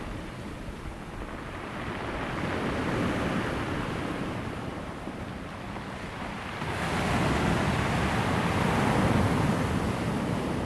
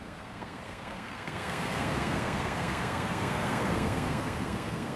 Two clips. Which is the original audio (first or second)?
first